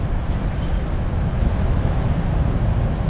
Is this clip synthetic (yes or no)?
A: no